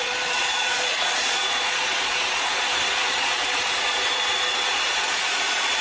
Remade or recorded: remade